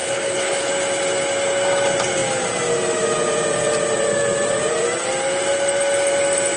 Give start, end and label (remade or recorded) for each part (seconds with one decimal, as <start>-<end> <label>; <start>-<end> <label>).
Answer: 0.0-0.7 remade; 0.7-6.6 recorded